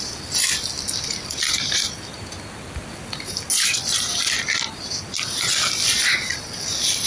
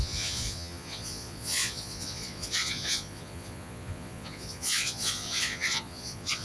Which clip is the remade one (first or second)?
second